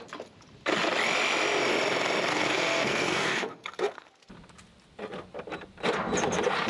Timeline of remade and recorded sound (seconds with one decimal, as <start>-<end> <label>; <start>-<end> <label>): 0.0-2.3 recorded; 2.3-4.1 remade; 4.1-6.7 recorded